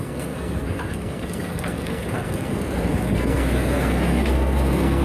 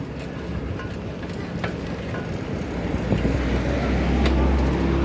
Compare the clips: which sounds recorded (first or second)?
second